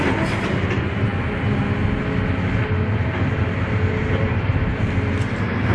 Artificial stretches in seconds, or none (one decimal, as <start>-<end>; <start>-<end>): none